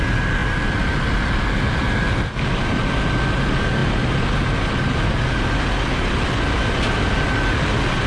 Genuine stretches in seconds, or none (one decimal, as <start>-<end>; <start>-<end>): 0.0-8.1